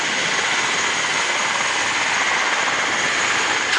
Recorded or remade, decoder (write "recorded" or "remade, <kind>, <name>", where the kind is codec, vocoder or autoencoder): recorded